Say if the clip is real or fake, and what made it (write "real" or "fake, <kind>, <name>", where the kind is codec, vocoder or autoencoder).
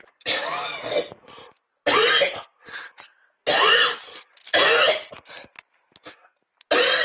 real